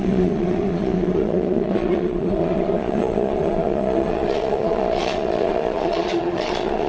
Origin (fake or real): fake